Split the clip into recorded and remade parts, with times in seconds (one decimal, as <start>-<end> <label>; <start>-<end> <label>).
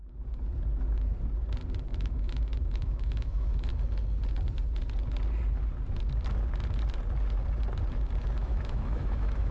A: 0.0-1.9 recorded; 1.9-3.7 remade; 3.7-8.4 recorded; 8.4-9.5 remade